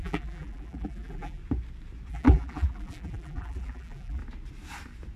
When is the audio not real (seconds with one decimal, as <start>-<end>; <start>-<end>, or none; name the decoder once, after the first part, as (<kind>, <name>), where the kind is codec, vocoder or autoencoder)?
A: 0.0-1.4 (vocoder, BigVGAN v2); 2.1-4.2